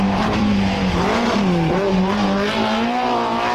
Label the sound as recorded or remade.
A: remade